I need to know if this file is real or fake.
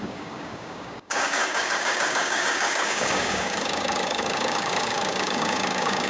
fake